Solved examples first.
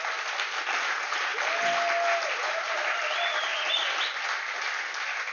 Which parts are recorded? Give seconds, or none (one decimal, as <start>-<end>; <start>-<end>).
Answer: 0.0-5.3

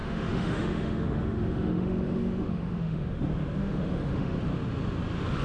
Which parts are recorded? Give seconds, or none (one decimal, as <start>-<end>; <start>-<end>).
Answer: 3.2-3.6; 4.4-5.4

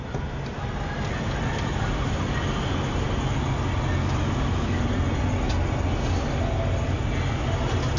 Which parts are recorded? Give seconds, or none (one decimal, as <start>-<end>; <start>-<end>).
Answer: 0.0-4.0; 4.8-8.0

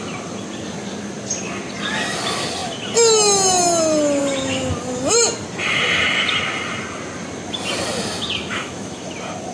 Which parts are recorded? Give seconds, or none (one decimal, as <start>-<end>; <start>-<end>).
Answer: 0.0-8.5; 9.0-9.5

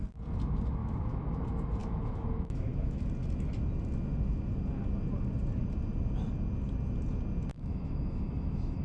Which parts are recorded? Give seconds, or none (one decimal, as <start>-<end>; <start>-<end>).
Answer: 0.0-0.8; 1.4-1.8; 3.0-7.5